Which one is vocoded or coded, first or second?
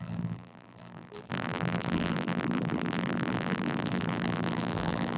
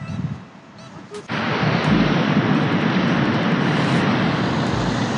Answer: first